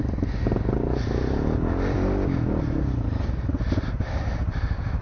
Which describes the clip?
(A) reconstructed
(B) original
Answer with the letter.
B